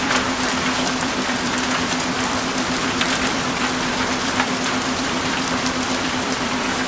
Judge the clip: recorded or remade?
remade